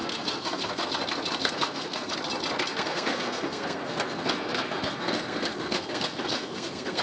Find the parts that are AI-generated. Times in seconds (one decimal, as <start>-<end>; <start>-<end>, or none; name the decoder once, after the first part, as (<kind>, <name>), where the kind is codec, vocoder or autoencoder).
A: 0.0-0.9 (codec, SNAC); 1.4-2.1; 2.7-7.0